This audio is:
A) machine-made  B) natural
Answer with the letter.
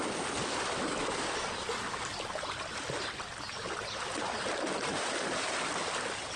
B